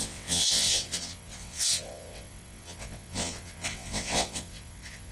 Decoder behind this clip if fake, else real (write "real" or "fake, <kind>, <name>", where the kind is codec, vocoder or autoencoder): fake, vocoder, WaveNeXt